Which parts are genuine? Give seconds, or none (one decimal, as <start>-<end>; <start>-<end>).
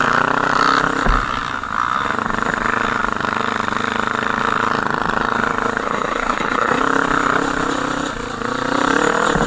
0.0-5.8; 6.8-9.5